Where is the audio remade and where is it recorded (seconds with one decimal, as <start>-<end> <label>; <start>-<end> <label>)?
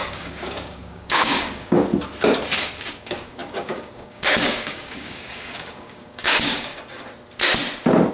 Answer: 0.0-1.9 remade; 1.9-2.6 recorded; 2.6-6.7 remade; 6.7-8.1 recorded